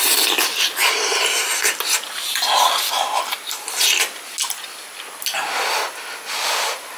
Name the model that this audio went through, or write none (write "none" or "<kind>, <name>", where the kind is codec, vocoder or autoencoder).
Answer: none